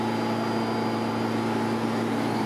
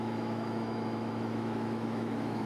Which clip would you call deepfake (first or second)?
second